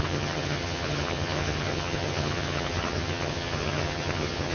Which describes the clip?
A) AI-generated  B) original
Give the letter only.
A